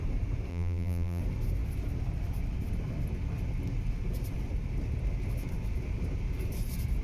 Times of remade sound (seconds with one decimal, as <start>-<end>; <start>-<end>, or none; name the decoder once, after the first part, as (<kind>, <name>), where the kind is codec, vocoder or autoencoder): 0.5-1.2 (vocoder, BigVGAN v2)

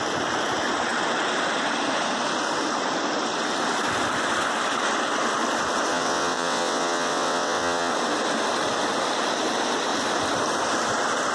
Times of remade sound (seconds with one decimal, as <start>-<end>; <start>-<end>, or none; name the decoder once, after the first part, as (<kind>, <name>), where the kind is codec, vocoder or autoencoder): 5.9-7.9 (vocoder, WaveNeXt)

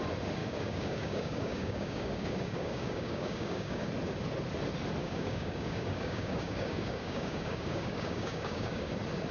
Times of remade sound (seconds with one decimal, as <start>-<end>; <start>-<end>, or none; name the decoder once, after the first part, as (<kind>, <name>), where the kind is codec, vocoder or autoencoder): 0.4-3.9 (codec, DAC); 5.0-8.9

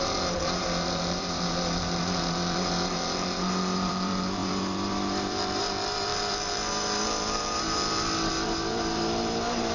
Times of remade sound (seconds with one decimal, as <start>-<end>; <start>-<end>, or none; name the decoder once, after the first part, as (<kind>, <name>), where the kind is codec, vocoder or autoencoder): 0.0-9.7 (vocoder, BigVGAN v2)

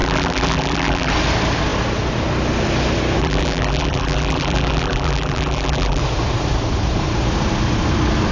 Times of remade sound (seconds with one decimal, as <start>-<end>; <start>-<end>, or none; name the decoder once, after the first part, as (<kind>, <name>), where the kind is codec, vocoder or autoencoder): 0.0-1.1 (vocoder, BigVGAN v2); 3.2-6.0

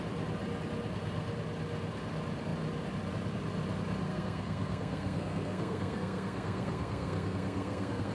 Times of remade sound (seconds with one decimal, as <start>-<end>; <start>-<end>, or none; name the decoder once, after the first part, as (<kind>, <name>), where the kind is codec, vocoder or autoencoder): 4.1-8.1 (codec, SNAC)